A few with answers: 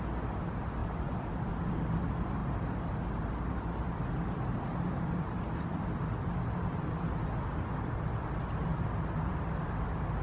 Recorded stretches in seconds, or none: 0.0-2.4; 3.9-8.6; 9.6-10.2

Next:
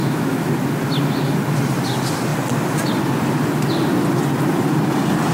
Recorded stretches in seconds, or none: 0.5-5.3

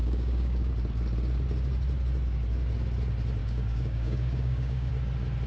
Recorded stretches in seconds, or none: 0.7-3.4; 4.9-5.5

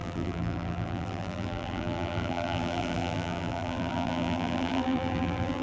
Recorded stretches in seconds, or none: none

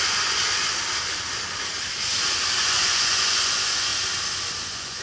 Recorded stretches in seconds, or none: 0.4-2.6; 3.9-4.6